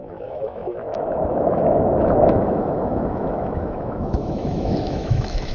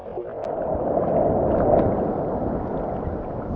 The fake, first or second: first